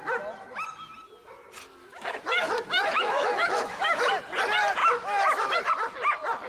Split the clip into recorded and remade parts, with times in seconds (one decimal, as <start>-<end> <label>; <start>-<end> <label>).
0.0-1.8 recorded; 1.8-4.1 remade; 4.1-4.8 recorded; 4.8-5.7 remade; 5.7-6.5 recorded